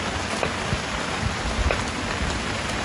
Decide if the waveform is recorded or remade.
recorded